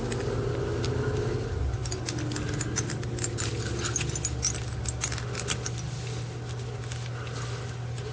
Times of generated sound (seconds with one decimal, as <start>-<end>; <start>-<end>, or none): none